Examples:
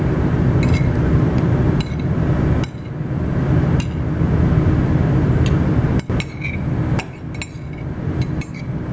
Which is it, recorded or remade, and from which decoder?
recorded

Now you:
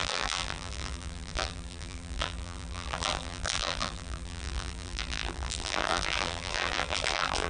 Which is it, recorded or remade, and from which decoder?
remade, vocoder, BigVGAN v2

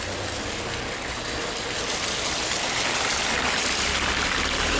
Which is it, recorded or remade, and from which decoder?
recorded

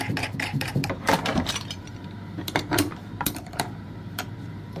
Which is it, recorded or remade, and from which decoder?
remade, vocoder, BigVGAN v2